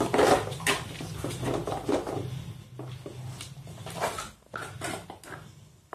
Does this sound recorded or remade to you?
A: recorded